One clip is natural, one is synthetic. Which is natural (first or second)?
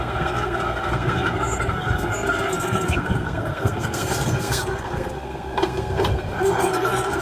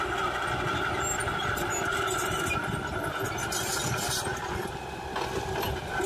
second